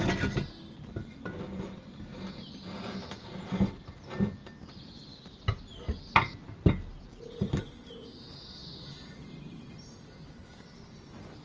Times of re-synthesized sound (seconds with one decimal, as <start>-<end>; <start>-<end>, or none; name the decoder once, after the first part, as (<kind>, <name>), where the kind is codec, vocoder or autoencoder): none